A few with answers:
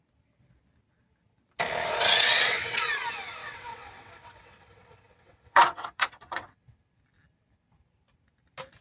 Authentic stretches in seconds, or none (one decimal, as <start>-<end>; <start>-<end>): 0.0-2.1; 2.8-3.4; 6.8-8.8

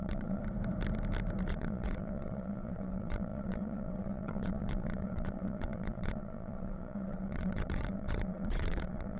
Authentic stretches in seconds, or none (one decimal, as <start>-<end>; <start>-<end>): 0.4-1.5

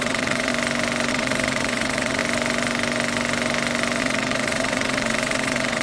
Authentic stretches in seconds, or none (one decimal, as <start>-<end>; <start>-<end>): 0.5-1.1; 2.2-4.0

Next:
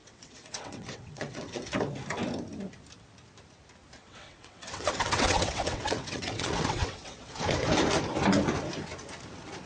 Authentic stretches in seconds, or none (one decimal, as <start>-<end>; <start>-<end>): 1.7-4.0; 7.4-9.7

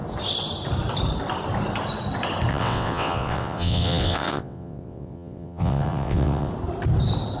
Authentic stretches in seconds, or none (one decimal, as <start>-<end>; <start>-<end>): 0.0-2.5; 6.5-7.4

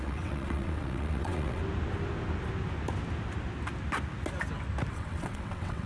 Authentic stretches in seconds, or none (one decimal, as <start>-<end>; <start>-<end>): 1.6-4.9

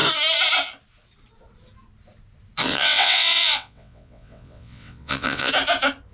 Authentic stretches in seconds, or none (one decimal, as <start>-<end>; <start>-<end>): 0.0-2.6; 5.5-6.1